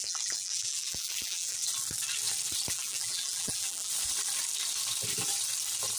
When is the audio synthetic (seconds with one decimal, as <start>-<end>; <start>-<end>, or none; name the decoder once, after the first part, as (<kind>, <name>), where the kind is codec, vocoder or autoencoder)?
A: 0.0-1.6 (vocoder, BigVGAN v2); 2.7-3.9